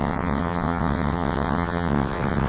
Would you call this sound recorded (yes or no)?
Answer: no